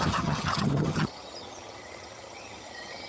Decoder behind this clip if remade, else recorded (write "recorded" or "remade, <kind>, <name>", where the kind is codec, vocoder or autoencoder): remade, vocoder, HiFi-GAN